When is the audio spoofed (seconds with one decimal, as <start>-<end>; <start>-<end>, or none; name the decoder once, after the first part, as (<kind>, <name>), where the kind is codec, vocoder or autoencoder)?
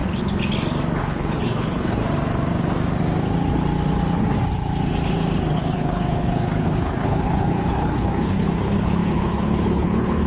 1.0-2.0 (codec, HILCodec); 5.5-10.3